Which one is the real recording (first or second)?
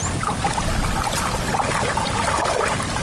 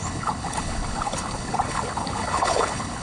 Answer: first